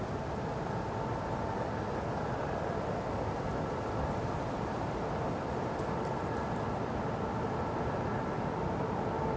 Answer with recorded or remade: recorded